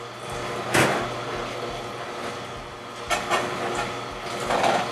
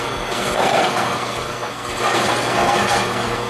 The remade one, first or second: second